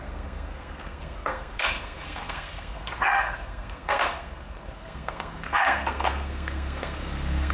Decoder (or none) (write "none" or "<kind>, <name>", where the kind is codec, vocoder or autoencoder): codec, SNAC